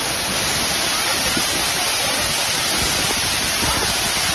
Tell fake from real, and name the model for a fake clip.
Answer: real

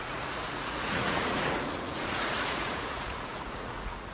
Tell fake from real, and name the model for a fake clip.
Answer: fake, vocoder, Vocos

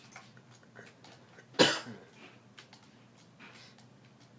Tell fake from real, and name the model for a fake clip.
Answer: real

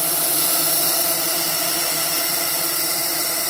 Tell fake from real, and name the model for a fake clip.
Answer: real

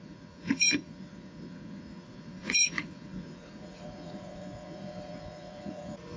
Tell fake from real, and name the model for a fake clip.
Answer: fake, vocoder, Vocos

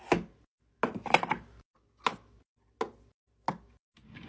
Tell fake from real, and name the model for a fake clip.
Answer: real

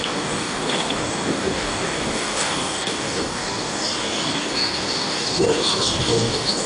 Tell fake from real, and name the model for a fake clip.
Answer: fake, codec, DAC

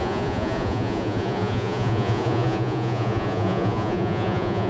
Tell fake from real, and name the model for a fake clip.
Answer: fake, vocoder, Vocos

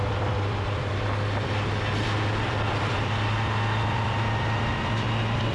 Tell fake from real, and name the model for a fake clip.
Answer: fake, vocoder, BigVGAN v2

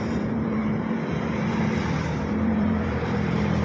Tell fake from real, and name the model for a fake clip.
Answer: fake, vocoder, BigVGAN v2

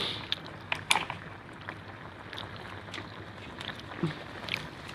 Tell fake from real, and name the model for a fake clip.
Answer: real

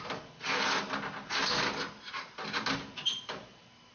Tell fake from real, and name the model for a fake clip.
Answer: real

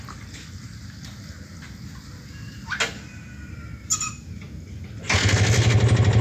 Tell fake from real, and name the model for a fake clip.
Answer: real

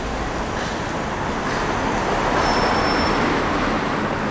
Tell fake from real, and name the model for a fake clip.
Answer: real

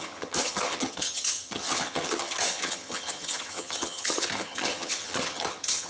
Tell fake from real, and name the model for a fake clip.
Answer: fake, vocoder, HiFi-GAN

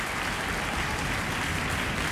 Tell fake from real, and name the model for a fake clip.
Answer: real